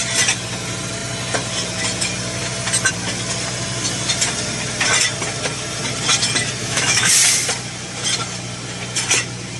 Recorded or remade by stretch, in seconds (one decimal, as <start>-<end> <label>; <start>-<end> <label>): 0.0-6.6 recorded; 6.6-7.1 remade; 7.1-9.6 recorded